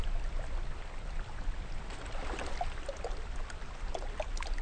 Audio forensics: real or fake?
real